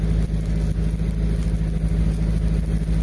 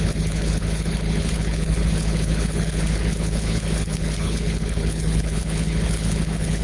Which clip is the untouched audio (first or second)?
first